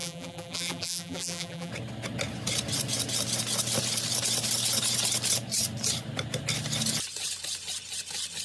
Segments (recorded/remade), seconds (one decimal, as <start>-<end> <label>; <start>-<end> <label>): 0.0-1.7 remade; 1.7-8.4 recorded